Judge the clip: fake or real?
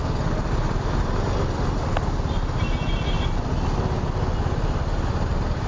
real